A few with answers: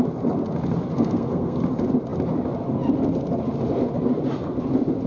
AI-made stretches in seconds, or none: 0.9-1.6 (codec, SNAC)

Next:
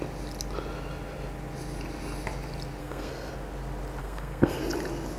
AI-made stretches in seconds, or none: 2.8-3.3 (codec, SNAC); 4.0-4.6

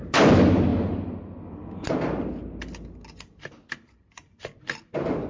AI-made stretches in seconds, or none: none

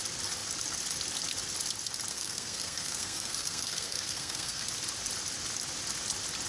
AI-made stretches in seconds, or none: 2.1-4.7 (codec, SNAC)

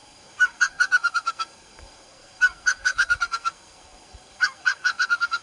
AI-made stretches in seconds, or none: 0.0-5.4 (codec, SNAC)